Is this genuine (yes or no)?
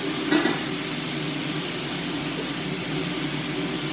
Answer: yes